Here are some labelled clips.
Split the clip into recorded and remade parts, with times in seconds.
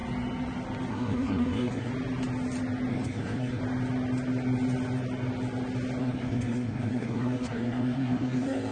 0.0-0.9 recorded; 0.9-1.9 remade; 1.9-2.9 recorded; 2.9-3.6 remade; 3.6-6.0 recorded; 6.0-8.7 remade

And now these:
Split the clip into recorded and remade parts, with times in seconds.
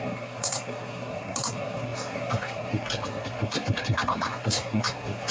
0.0-5.3 remade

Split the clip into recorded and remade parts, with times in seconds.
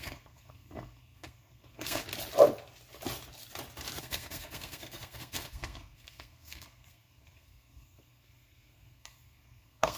0.0-2.0 remade; 2.0-4.0 recorded; 4.0-10.0 remade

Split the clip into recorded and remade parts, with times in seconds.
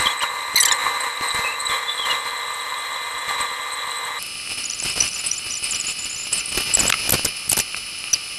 0.0-8.4 recorded